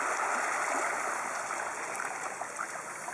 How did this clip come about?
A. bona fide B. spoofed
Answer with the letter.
A